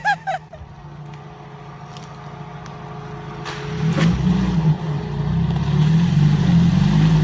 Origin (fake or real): real